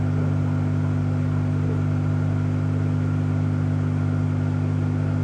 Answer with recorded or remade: recorded